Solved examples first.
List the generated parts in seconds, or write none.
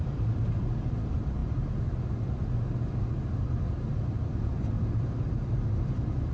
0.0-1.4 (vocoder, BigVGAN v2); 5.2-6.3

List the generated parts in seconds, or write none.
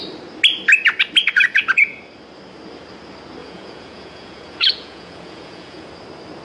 1.2-2.0 (vocoder, Vocos); 3.4-5.9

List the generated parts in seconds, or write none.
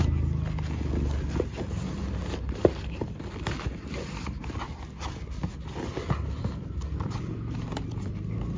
none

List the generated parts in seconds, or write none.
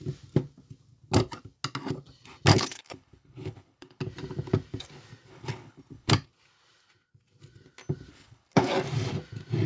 2.5-4.0 (codec, HILCodec); 5.3-6.1; 8.1-8.7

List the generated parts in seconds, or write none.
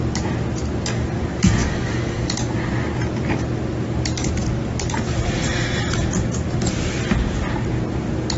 1.6-2.3 (codec, DAC)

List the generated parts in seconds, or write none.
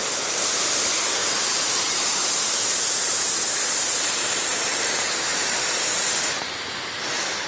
1.2-5.7 (vocoder, BigVGAN v2)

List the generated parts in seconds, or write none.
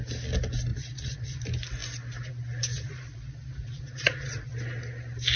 0.7-1.4 (vocoder, Vocos); 2.7-4.5